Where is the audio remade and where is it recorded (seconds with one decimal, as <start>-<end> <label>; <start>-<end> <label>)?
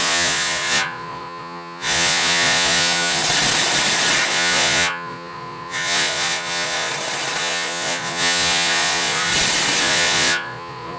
0.0-3.2 remade; 3.2-4.3 recorded; 4.3-6.9 remade; 6.9-7.4 recorded; 7.4-9.3 remade; 9.3-9.8 recorded; 9.8-11.0 remade